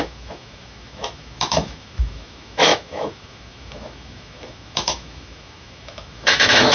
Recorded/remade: remade